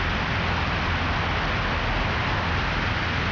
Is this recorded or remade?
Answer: recorded